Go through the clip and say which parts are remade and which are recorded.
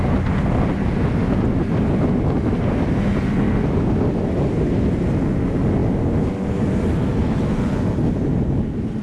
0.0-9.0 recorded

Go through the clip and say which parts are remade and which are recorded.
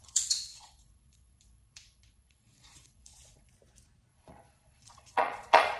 0.0-3.5 remade; 3.5-4.1 recorded; 4.1-5.8 remade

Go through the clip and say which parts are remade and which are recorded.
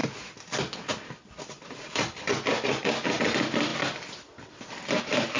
0.0-5.4 recorded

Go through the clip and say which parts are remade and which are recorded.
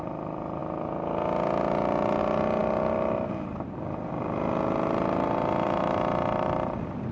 0.0-7.1 recorded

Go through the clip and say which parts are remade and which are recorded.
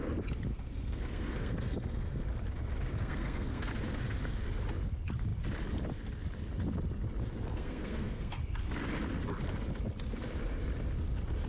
0.0-0.5 recorded; 0.5-2.2 remade; 2.2-2.9 recorded; 2.9-3.7 remade; 3.7-7.5 recorded; 7.5-8.4 remade; 8.4-11.5 recorded